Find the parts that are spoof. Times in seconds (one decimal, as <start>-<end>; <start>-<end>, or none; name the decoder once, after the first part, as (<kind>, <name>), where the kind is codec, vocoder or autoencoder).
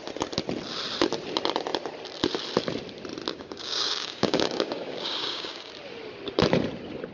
3.3-5.7 (codec, DAC)